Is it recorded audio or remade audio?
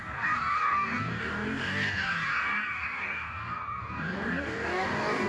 remade